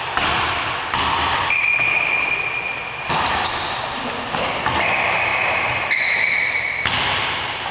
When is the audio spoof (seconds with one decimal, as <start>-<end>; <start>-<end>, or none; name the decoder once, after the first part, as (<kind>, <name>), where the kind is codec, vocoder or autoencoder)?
0.0-5.3 (vocoder, BigVGAN v2); 7.0-7.7